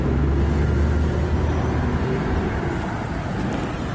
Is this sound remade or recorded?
recorded